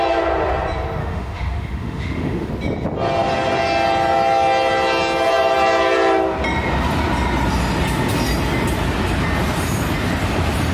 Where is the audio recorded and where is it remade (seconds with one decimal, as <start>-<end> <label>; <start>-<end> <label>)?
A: 0.0-1.0 recorded; 1.0-2.5 remade; 2.5-10.7 recorded